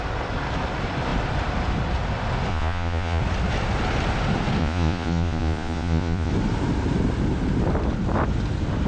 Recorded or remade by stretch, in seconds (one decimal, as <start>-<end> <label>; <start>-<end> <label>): 0.0-2.5 recorded; 2.5-3.2 remade; 3.2-4.6 recorded; 4.6-6.3 remade; 6.3-8.9 recorded